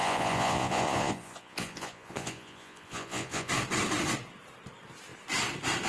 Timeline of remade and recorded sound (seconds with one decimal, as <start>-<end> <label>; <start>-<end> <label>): 0.0-3.5 remade; 3.5-5.9 recorded